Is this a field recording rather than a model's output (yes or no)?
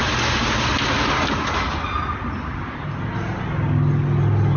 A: yes